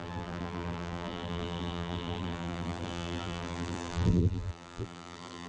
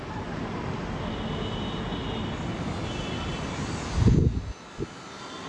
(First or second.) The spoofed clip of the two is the first